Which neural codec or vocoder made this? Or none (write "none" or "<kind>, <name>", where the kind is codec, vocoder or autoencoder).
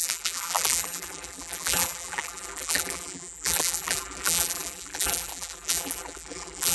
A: vocoder, BigVGAN v2